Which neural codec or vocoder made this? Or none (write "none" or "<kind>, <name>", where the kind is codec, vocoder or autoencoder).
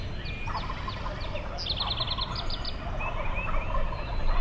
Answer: none